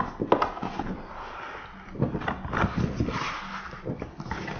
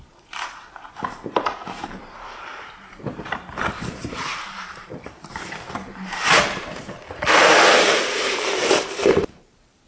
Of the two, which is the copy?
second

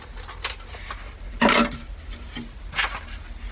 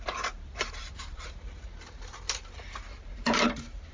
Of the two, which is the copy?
second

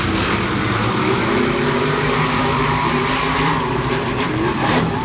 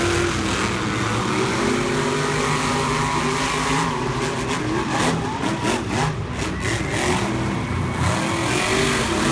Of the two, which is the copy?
first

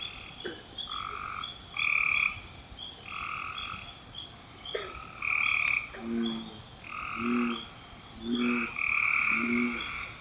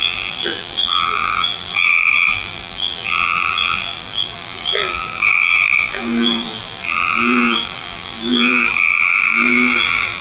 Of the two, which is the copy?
second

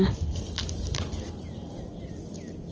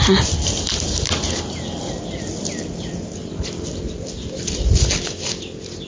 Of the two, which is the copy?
first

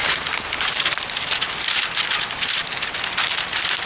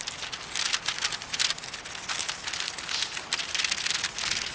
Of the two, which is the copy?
first